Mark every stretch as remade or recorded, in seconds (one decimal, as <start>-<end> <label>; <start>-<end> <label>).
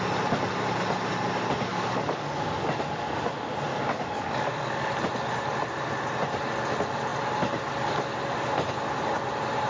0.0-1.7 recorded; 1.7-2.8 remade; 2.8-3.7 recorded; 3.7-4.9 remade; 4.9-9.7 recorded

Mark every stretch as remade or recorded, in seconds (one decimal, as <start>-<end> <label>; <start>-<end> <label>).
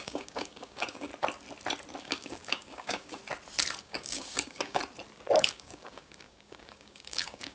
0.0-1.1 remade; 1.1-2.0 recorded; 2.0-3.2 remade; 3.2-3.8 recorded; 3.8-4.8 remade; 4.8-5.4 recorded; 5.4-7.5 remade